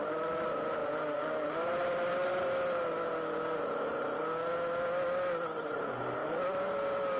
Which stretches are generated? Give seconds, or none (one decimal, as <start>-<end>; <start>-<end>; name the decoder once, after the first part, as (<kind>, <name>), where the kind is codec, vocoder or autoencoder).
none